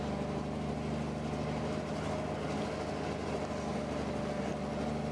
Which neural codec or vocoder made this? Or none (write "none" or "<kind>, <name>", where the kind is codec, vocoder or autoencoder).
none